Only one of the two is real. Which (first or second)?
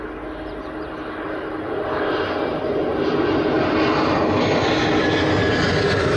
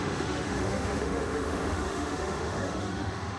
first